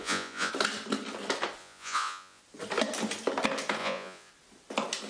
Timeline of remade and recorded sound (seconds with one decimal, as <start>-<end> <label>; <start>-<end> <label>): 0.0-0.5 remade; 0.5-1.6 recorded; 1.6-2.4 remade; 2.4-3.8 recorded; 3.8-4.3 remade; 4.3-5.1 recorded

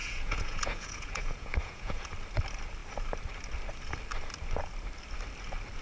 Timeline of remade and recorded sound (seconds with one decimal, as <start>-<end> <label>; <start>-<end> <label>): 0.0-2.1 remade; 2.1-5.8 recorded

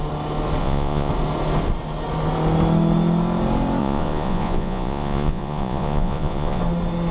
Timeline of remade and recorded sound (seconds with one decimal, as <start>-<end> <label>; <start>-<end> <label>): 0.0-0.6 recorded; 0.6-1.1 remade; 1.1-3.8 recorded; 3.8-6.6 remade; 6.6-7.1 recorded

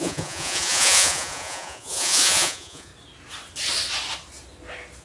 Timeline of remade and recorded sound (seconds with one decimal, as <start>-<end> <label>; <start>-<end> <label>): 0.0-2.9 remade; 2.9-5.0 recorded

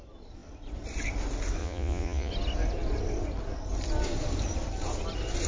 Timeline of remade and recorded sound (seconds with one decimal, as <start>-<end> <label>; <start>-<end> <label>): 0.0-1.6 recorded; 1.6-2.3 remade; 2.3-5.5 recorded